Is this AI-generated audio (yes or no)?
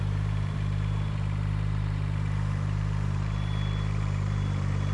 yes